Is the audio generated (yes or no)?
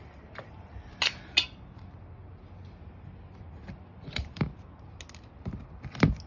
no